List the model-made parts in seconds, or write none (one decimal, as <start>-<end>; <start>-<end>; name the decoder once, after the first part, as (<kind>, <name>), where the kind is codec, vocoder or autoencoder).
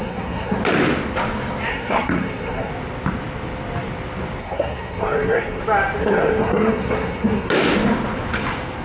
0.0-0.6 (codec, SNAC); 1.7-2.7; 4.4-5.6; 6.0-7.5